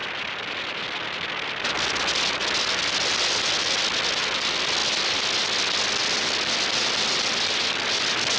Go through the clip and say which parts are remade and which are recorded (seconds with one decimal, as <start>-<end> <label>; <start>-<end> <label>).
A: 0.0-8.4 recorded